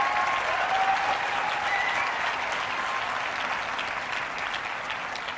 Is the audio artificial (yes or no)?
no